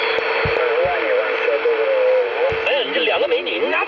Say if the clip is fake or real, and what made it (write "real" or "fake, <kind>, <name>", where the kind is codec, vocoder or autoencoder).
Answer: real